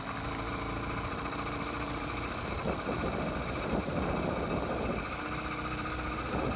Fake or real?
real